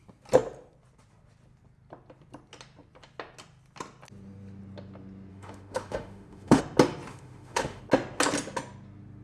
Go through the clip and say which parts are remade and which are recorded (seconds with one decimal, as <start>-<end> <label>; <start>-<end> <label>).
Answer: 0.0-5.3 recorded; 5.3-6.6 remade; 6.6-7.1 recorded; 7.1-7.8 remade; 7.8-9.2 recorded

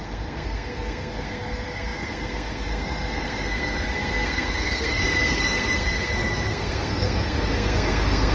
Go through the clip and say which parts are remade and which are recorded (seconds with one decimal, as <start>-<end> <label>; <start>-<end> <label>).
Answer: 0.0-8.3 remade

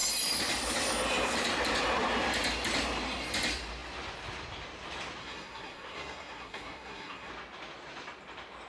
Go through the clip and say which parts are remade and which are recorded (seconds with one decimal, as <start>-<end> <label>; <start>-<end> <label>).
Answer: 0.0-5.2 recorded; 5.2-7.3 remade; 7.3-8.7 recorded

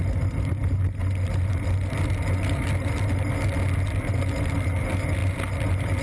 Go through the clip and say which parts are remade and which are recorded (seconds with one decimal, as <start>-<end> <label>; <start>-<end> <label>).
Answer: 0.0-6.0 recorded